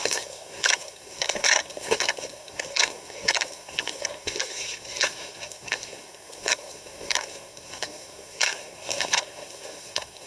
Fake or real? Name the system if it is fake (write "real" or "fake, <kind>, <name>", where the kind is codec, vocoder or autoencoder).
fake, codec, SNAC